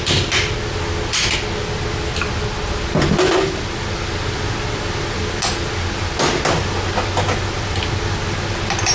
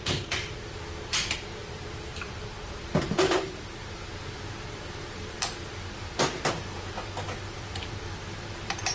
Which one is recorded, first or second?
first